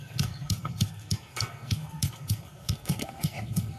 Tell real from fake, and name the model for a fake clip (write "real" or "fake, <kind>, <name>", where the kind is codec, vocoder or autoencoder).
fake, codec, SNAC